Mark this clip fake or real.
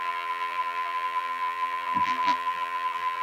fake